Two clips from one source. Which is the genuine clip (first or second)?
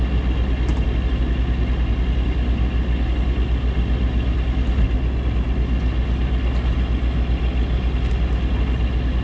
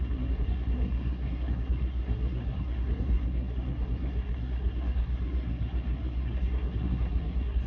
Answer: first